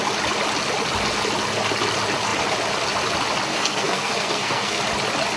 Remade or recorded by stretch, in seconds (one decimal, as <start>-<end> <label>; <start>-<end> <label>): 0.0-3.5 recorded; 3.5-4.8 remade; 4.8-5.4 recorded